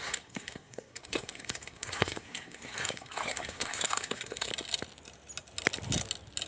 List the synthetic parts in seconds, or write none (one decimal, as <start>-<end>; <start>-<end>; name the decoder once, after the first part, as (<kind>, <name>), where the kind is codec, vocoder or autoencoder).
0.0-4.5 (codec, SNAC)